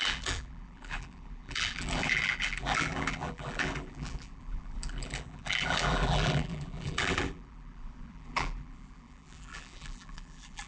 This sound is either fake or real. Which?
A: fake